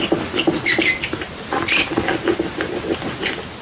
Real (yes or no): yes